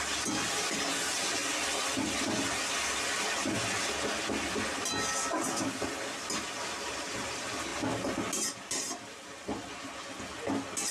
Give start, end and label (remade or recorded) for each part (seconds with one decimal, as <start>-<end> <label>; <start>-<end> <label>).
0.0-10.9 recorded